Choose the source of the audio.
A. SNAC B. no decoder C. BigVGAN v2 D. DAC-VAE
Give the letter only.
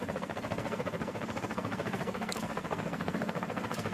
A